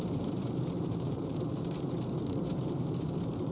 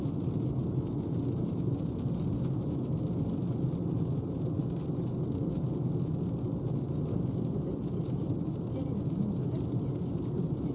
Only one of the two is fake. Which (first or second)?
first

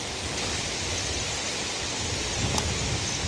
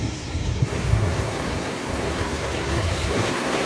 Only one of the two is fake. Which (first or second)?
second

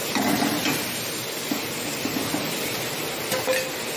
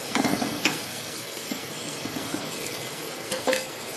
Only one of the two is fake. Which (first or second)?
second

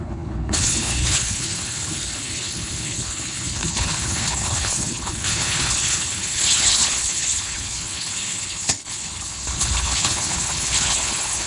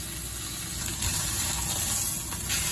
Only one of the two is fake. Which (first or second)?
first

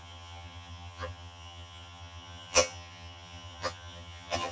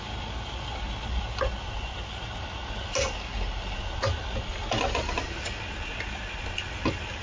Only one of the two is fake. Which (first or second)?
first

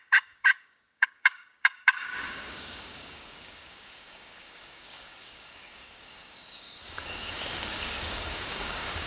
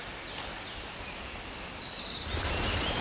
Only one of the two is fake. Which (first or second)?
first